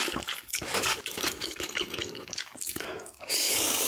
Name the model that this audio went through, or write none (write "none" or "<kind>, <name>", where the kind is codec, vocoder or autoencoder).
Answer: codec, DAC